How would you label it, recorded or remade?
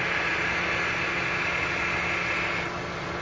recorded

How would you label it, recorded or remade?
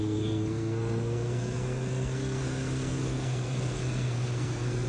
remade